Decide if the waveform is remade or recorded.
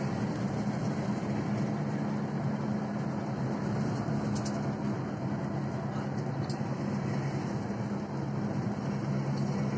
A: recorded